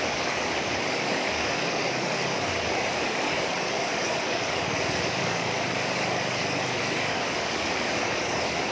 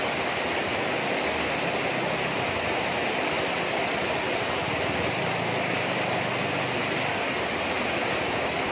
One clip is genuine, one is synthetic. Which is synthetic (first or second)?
first